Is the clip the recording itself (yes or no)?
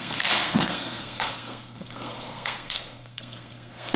no